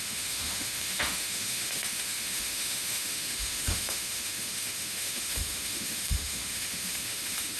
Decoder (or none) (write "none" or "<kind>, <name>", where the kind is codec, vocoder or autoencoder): autoencoder, DAC-VAE